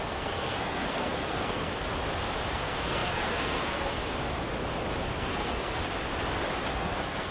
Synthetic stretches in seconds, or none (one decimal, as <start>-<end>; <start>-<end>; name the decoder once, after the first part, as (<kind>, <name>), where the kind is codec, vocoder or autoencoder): 0.0-1.7 (codec, SNAC); 2.5-4.0; 5.0-5.8; 6.7-7.3